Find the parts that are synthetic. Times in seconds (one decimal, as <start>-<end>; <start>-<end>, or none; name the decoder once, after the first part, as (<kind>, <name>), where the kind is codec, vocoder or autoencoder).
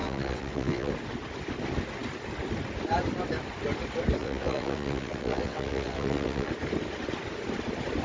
0.0-0.9 (vocoder, WaveNeXt); 4.2-6.5